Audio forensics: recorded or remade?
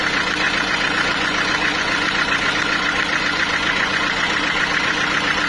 remade